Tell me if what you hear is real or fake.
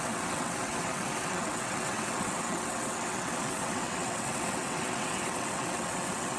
fake